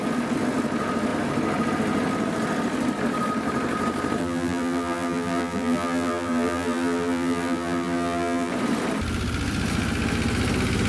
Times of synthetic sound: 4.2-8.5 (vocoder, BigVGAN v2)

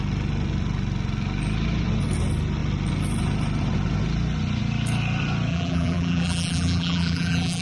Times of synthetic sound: 5.5-7.6 (vocoder, BigVGAN v2)